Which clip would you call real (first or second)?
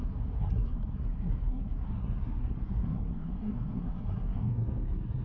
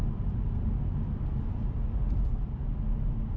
second